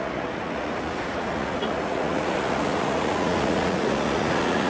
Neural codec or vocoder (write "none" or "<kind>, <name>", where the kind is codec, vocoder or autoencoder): vocoder, Vocos